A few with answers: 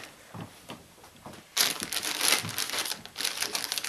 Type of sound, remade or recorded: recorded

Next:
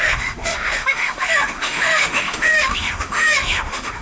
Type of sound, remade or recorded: remade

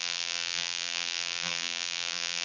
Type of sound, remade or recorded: remade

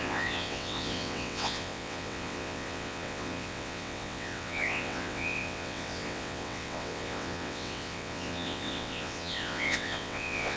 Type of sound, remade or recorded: remade